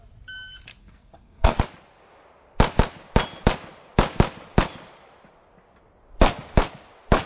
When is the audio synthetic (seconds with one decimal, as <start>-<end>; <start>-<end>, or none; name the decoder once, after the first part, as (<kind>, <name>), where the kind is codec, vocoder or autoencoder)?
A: 0.8-1.6 (codec, SNAC)